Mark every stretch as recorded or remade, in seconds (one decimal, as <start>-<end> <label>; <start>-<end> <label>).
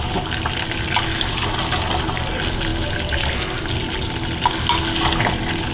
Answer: 0.0-5.7 recorded